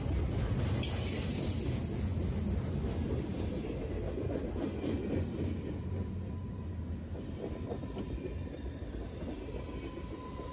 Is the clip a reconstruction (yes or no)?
no